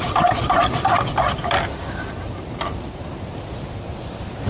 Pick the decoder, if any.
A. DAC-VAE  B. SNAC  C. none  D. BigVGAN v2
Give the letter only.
C